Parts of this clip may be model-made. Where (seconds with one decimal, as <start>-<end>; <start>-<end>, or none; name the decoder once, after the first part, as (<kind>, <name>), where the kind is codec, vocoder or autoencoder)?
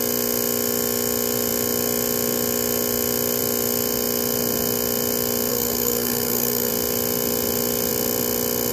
5.5-6.7 (codec, SNAC)